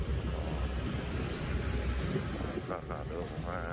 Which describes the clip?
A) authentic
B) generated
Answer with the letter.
A